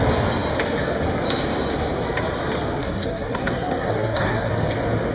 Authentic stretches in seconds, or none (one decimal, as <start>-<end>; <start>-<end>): 0.0-2.8; 4.5-5.1